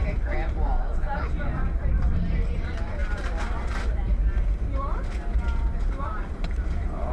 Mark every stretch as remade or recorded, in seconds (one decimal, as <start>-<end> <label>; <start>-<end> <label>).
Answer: 0.0-4.2 remade; 4.2-5.7 recorded; 5.7-7.1 remade